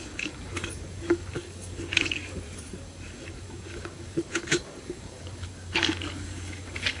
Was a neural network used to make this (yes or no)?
yes